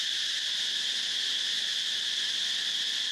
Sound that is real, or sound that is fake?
fake